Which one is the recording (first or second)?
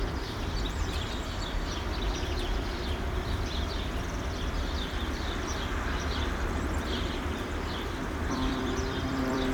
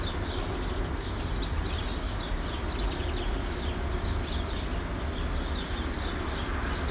second